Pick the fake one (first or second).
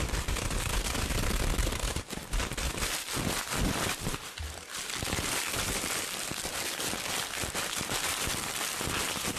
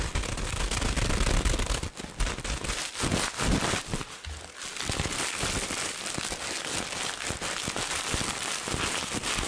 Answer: first